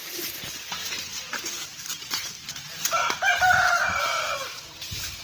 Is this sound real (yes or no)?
no